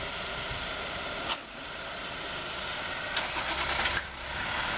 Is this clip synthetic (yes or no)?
no